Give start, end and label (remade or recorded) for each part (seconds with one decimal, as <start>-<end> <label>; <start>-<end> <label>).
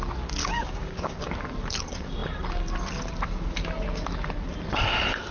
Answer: 0.0-0.4 recorded; 0.4-1.2 remade; 1.2-5.3 recorded